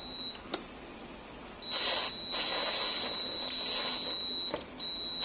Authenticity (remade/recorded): recorded